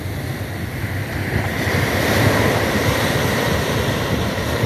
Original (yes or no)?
no